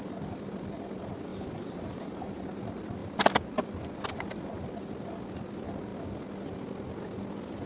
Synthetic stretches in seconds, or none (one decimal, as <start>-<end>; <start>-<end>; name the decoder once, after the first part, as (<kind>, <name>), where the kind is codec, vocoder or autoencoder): 1.3-2.4 (vocoder, BigVGAN v2)